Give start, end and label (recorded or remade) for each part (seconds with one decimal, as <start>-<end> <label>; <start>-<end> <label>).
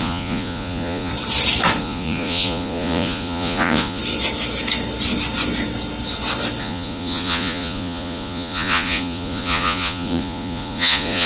0.0-1.1 remade; 1.1-1.8 recorded; 1.8-4.0 remade; 4.0-6.6 recorded; 6.6-11.3 remade